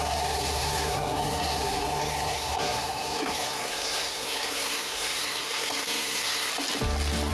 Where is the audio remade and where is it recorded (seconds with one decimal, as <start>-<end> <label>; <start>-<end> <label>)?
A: 0.0-6.5 remade; 6.5-7.3 recorded